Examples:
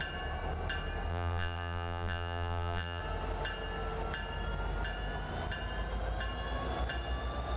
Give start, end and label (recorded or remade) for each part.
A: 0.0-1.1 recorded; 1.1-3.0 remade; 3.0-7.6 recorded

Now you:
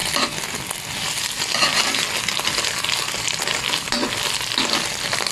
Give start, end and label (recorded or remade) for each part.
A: 0.0-5.3 recorded

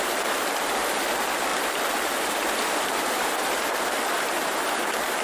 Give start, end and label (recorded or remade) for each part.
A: 0.0-1.5 recorded; 1.5-3.1 remade; 3.1-5.2 recorded

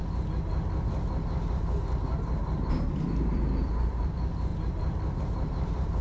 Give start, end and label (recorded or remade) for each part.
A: 0.0-2.7 recorded; 2.7-6.0 remade

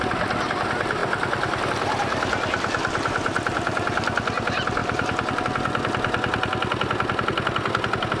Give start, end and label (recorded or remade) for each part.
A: 0.0-4.8 recorded; 4.8-5.4 remade; 5.4-8.2 recorded

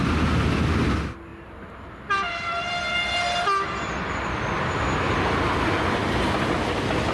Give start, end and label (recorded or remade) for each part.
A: 0.0-7.1 recorded